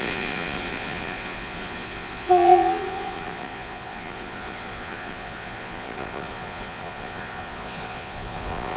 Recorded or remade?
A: remade